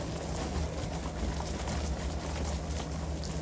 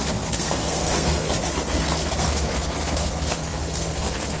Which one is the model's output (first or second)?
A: second